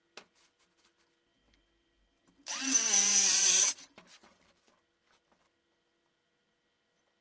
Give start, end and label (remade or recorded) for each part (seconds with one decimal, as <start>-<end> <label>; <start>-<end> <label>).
0.0-7.2 recorded